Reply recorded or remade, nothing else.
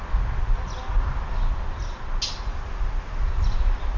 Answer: recorded